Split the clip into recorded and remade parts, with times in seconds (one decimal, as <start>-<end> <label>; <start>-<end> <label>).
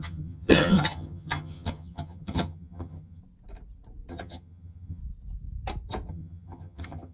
0.0-3.2 remade; 3.2-4.1 recorded; 4.1-5.0 remade; 5.0-6.1 recorded; 6.1-7.1 remade